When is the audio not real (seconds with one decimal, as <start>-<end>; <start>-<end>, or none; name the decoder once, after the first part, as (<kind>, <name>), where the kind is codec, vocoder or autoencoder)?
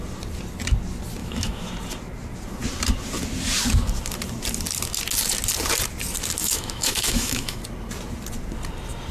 1.2-1.7 (autoencoder, DAC-VAE); 6.4-7.6